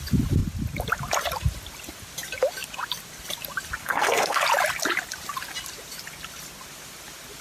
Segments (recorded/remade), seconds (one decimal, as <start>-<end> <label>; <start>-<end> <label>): 0.0-3.8 recorded; 3.8-4.4 remade; 4.4-7.4 recorded